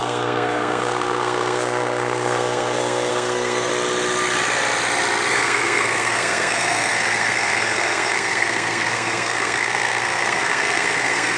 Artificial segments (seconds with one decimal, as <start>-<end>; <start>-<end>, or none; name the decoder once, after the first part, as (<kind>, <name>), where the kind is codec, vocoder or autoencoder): 0.0-3.7 (codec, SNAC); 5.3-11.4